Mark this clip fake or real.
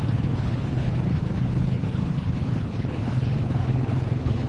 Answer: fake